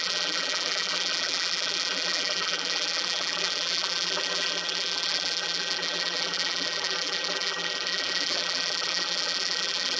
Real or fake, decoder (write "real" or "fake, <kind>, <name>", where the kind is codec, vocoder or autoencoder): fake, vocoder, BigVGAN v2